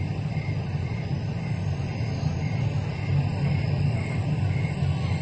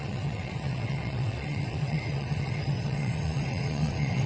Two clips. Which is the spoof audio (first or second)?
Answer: second